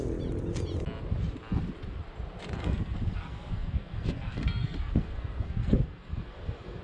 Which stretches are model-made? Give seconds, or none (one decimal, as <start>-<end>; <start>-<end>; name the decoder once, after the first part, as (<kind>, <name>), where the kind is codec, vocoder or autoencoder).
2.6-6.8 (codec, SNAC)